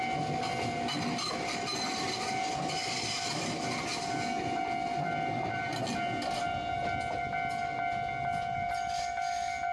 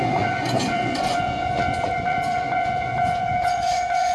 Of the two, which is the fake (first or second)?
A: second